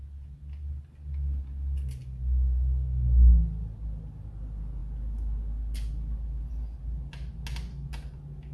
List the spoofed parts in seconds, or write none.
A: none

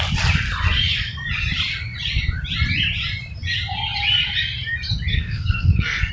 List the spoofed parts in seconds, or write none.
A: 5.1-6.1 (codec, SNAC)